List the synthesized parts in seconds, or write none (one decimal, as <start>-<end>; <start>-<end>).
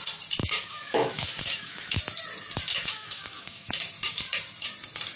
0.4-2.0; 2.7-3.7